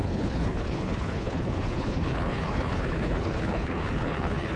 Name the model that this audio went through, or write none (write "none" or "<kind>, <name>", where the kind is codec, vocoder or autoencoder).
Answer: codec, HILCodec